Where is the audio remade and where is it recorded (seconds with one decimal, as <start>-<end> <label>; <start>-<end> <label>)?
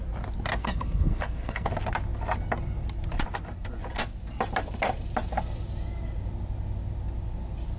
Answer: 0.0-0.6 recorded; 0.6-1.7 remade; 1.7-7.8 recorded